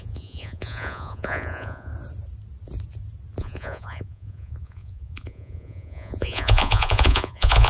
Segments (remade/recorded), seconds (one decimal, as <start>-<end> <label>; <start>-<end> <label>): 0.0-1.9 remade; 1.9-3.4 recorded; 3.4-7.7 remade